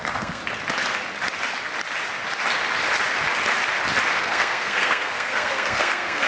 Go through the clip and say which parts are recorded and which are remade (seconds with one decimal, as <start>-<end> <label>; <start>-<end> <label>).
0.0-0.4 remade; 0.4-4.2 recorded; 4.2-6.3 remade

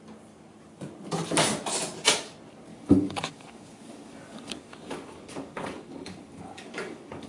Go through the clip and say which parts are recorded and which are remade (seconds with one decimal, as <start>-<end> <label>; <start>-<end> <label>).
0.0-2.7 recorded; 2.7-7.3 remade

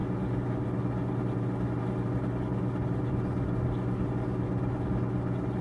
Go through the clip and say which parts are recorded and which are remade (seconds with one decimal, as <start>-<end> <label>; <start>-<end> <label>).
0.0-5.6 recorded